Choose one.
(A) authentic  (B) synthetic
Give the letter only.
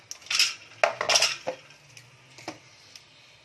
A